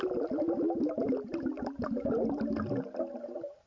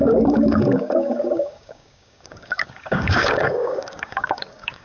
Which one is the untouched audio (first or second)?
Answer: first